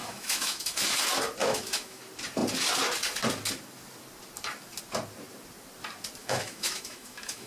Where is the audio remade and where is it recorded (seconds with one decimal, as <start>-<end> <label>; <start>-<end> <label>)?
0.0-0.9 remade; 0.9-1.4 recorded; 1.4-2.0 remade; 2.0-6.2 recorded; 6.2-7.5 remade